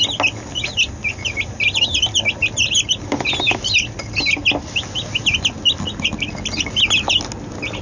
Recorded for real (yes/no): yes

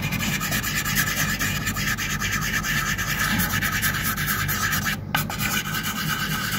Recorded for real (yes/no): yes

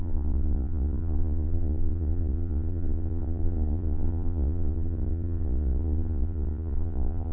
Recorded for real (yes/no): no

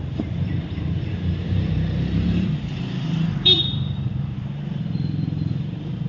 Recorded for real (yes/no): no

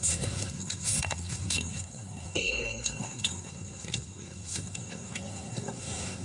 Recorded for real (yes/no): no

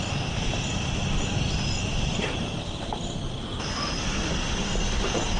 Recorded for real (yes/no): no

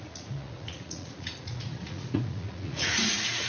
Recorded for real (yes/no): no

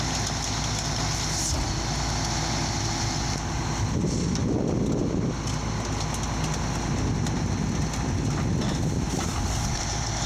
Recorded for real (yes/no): yes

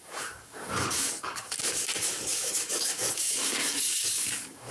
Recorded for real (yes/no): no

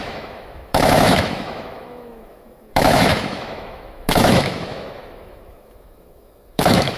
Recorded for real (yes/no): no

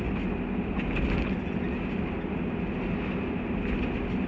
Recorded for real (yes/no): yes